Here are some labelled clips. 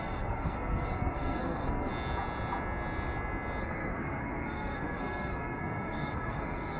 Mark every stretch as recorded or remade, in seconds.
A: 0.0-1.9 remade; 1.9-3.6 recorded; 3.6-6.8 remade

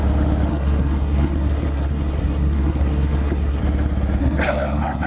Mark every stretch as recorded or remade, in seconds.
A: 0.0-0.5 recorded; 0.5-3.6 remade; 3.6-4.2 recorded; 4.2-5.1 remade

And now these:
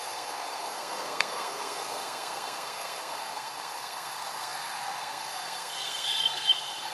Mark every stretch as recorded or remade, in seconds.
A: 0.0-6.9 remade

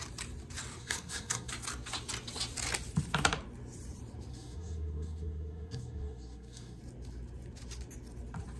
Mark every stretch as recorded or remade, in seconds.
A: 0.0-0.8 recorded; 0.8-1.5 remade; 1.5-4.3 recorded; 4.3-6.8 remade; 6.8-8.6 recorded

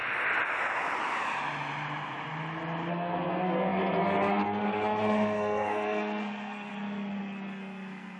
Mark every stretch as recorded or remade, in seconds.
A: 0.0-2.9 recorded; 2.9-8.2 remade

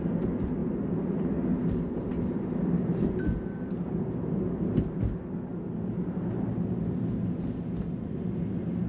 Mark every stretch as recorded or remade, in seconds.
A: 0.0-8.9 recorded

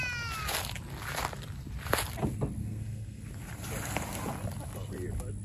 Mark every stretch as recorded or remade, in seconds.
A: 0.0-2.6 recorded; 2.6-3.2 remade; 3.2-5.4 recorded

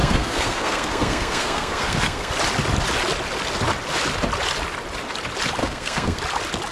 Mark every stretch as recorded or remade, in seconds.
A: 0.0-2.3 remade; 2.3-5.6 recorded; 5.6-6.2 remade; 6.2-6.7 recorded